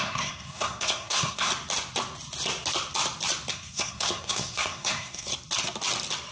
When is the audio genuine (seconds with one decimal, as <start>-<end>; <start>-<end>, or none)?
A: 1.5-3.5; 5.3-6.3